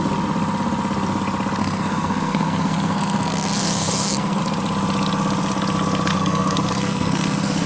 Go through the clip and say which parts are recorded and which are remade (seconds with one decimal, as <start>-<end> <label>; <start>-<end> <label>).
0.0-1.6 recorded; 1.6-4.4 remade; 4.4-6.1 recorded; 6.1-7.7 remade